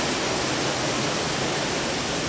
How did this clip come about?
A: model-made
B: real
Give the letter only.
B